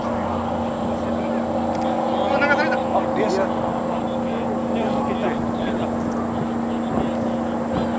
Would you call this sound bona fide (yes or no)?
yes